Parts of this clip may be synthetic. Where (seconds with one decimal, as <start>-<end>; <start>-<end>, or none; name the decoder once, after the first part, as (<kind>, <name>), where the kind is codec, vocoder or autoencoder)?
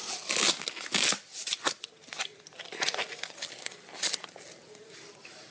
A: 3.3-5.5 (vocoder, BigVGAN v2)